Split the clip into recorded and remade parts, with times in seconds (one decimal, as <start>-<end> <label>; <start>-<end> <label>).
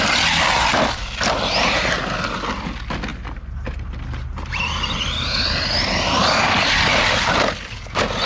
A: 0.0-8.3 recorded